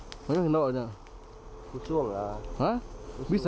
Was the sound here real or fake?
real